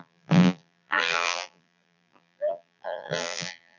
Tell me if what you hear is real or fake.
fake